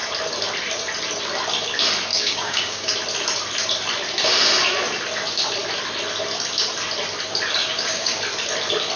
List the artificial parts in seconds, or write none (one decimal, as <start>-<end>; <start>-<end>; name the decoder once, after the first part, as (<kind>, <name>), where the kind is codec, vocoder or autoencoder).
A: 2.1-2.9 (codec, DAC); 7.6-8.2